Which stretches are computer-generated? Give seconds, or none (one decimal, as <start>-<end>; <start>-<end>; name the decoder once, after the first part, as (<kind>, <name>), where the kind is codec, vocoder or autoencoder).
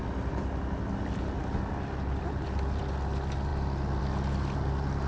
none